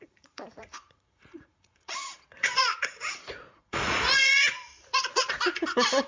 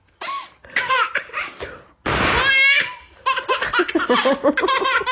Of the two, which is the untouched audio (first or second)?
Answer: second